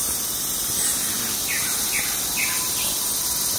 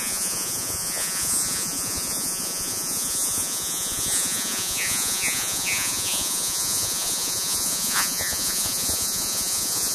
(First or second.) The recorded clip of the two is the first